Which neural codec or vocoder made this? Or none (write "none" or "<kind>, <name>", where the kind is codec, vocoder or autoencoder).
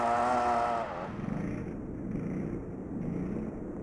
none